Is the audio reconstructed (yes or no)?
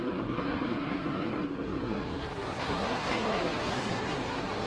yes